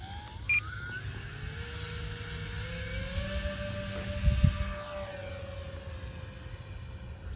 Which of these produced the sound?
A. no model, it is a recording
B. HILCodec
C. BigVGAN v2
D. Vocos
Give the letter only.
A